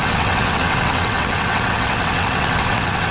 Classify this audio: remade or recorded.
remade